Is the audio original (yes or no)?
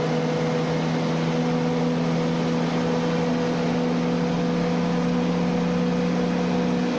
yes